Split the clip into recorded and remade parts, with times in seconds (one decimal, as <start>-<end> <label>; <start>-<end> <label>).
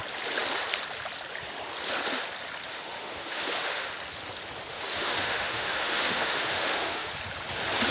0.0-2.7 recorded; 2.7-3.9 remade; 3.9-4.7 recorded; 4.7-7.1 remade; 7.1-7.9 recorded